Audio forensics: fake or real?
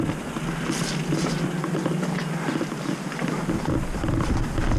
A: real